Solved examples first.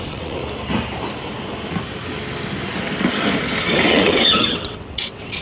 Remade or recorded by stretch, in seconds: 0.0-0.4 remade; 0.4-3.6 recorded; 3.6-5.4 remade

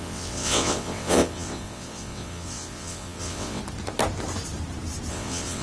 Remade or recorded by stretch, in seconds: 0.0-3.6 remade; 3.6-5.1 recorded; 5.1-5.6 remade

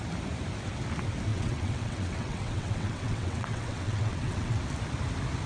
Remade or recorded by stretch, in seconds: 0.0-1.3 recorded; 1.3-4.6 remade; 4.6-5.5 recorded

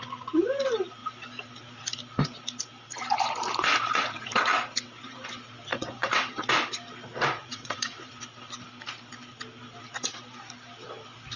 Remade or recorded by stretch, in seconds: 0.0-5.7 recorded; 5.7-6.5 remade; 6.5-7.4 recorded; 7.4-8.1 remade; 8.1-11.4 recorded

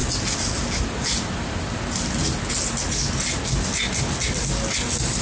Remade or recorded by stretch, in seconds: 0.0-5.2 recorded

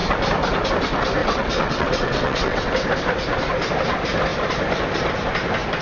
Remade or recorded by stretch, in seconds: 0.0-1.2 recorded; 1.2-2.7 remade; 2.7-5.8 recorded